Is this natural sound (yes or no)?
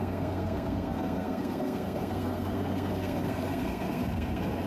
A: no